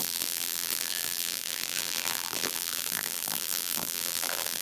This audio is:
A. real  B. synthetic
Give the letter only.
B